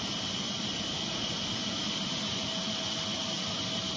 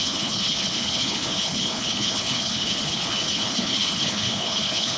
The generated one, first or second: second